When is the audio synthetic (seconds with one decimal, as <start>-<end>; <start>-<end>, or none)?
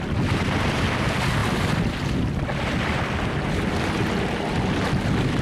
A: none